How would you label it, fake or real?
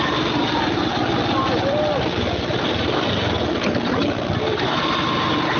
real